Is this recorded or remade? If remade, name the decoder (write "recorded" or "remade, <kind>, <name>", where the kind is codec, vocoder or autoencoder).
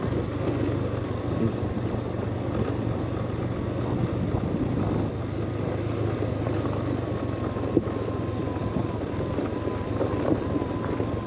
recorded